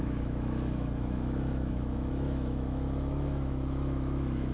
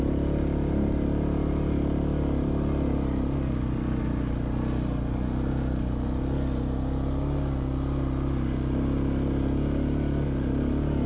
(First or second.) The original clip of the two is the second